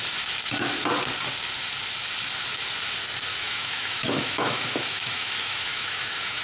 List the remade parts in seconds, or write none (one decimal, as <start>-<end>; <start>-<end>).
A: 3.3-6.4